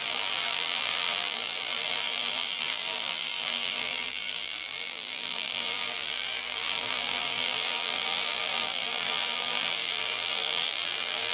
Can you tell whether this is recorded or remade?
remade